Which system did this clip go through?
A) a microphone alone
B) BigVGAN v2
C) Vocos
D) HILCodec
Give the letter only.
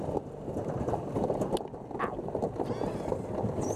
A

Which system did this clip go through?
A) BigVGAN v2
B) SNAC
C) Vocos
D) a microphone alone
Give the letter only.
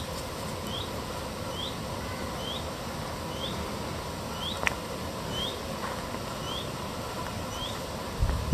D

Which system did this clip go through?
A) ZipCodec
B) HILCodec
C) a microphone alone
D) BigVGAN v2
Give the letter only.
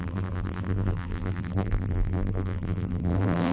D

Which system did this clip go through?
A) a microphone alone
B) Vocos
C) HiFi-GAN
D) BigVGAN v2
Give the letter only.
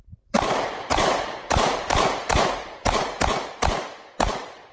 D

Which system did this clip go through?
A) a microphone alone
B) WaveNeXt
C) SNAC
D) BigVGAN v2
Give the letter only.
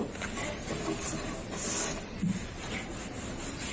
A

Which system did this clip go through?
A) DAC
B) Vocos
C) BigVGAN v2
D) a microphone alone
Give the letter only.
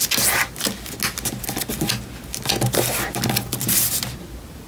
D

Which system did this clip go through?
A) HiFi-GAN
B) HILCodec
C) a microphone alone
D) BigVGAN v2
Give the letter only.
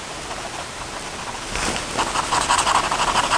C